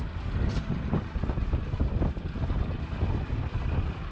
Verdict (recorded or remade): recorded